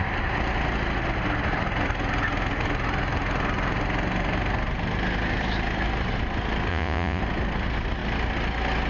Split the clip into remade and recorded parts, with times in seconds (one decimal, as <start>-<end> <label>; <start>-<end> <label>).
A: 0.0-6.7 recorded; 6.7-7.2 remade; 7.2-8.9 recorded